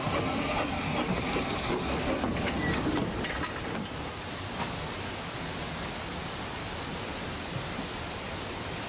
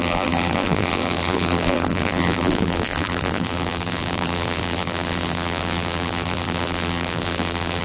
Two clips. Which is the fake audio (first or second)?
second